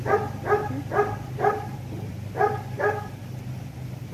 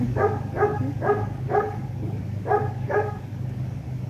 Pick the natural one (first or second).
first